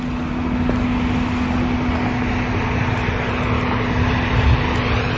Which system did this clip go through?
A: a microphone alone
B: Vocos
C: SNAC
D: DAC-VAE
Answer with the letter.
A